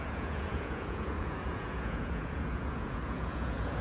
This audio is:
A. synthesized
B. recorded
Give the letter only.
A